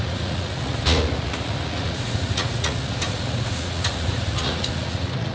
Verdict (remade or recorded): remade